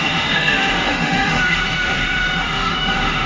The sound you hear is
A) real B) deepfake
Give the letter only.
B